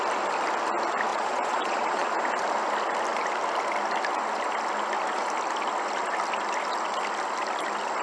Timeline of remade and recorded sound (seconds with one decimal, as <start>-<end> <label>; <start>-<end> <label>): 0.0-1.1 recorded; 1.1-2.1 remade; 2.1-8.0 recorded